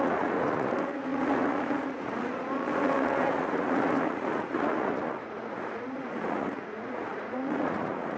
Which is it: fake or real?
fake